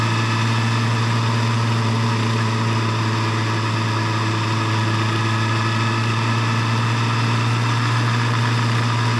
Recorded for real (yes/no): yes